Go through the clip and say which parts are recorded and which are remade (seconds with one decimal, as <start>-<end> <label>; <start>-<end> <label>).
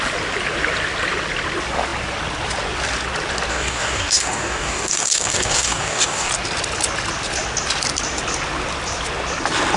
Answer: 0.0-3.5 recorded; 3.5-6.3 remade; 6.3-9.8 recorded